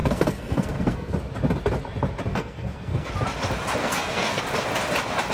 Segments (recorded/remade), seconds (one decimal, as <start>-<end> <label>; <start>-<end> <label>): 0.0-1.1 remade; 1.1-2.3 recorded; 2.3-3.1 remade; 3.1-3.8 recorded; 3.8-4.4 remade; 4.4-5.3 recorded